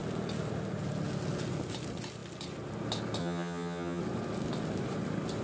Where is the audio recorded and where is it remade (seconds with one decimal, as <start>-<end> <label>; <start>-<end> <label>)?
0.0-3.2 recorded; 3.2-4.0 remade; 4.0-5.4 recorded